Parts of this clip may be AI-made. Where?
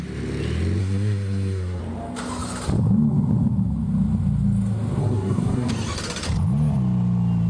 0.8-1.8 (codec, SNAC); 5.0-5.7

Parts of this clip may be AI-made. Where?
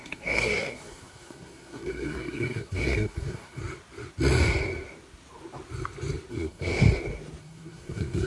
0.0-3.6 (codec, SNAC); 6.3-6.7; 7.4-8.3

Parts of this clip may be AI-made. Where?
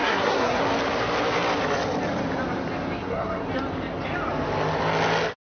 0.0-0.6 (codec, SNAC); 3.0-3.5